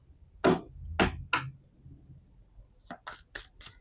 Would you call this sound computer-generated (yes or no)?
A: no